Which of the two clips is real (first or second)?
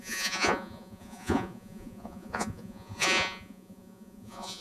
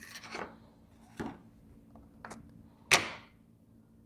second